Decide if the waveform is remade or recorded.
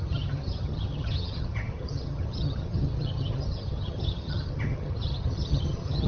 remade